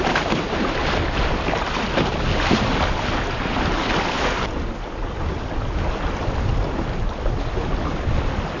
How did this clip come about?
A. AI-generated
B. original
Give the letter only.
B